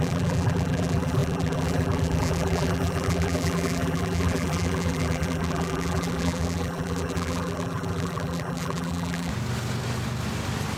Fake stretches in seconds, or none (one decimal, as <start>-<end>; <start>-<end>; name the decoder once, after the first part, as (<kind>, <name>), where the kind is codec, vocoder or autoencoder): 0.0-9.3 (vocoder, BigVGAN v2)